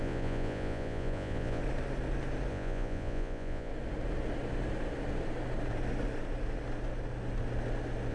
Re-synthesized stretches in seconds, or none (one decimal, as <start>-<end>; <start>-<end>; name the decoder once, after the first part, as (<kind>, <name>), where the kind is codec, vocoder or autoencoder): 0.0-1.6 (vocoder, Vocos); 2.5-3.7

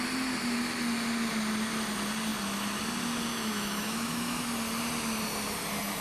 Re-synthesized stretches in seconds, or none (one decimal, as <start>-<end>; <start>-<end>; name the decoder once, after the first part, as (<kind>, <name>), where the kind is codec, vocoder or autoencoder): 3.3-4.4 (autoencoder, DAC-VAE)

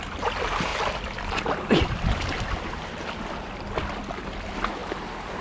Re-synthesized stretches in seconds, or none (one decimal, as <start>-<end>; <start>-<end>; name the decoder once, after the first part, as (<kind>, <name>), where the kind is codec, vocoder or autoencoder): none

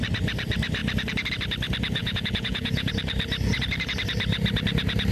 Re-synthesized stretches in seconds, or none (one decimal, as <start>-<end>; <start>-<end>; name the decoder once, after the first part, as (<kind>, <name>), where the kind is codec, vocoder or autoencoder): 2.0-2.9 (vocoder, Vocos)

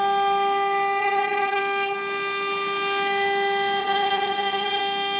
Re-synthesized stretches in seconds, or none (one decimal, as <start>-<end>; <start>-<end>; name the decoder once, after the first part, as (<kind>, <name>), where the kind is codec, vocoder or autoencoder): 1.0-1.6 (vocoder, HiFi-GAN); 3.8-4.8

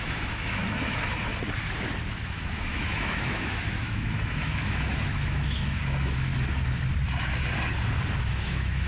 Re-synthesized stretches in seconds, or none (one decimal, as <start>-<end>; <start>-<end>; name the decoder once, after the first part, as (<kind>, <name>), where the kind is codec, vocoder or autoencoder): 0.0-0.6 (autoencoder, DAC-VAE); 2.1-6.3; 8.2-8.9

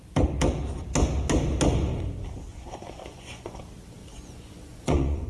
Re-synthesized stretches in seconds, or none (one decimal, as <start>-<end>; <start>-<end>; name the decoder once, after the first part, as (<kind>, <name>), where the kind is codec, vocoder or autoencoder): 2.5-3.6 (vocoder, Vocos); 4.0-5.3